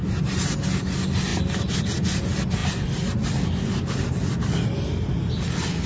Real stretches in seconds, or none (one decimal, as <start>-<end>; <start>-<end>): 0.0-5.9

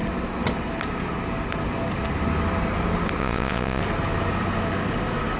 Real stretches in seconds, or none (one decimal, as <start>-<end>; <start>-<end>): 0.0-3.2; 3.8-5.4

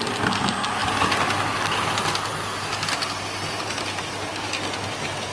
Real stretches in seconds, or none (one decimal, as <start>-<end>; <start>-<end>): 0.0-5.3

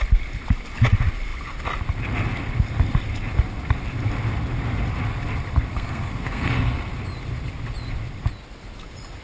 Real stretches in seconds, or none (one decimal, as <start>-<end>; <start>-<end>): 0.0-5.7; 6.9-9.2